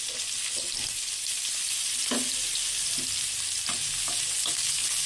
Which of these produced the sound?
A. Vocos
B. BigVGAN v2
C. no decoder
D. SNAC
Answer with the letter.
C